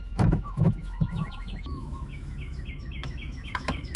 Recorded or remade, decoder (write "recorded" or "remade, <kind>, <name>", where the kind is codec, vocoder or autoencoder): remade, autoencoder, DAC-VAE